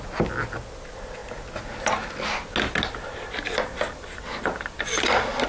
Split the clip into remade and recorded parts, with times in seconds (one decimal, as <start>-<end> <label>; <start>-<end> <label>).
0.0-5.5 recorded